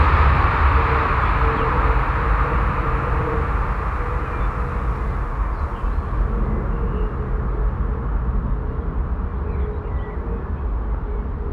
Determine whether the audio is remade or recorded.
recorded